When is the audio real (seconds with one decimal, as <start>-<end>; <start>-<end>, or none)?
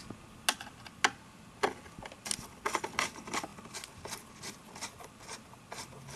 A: 0.0-6.2